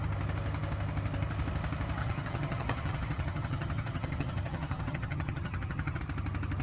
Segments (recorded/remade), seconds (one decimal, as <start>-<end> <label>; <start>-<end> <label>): 0.0-2.0 recorded; 2.0-6.0 remade; 6.0-6.6 recorded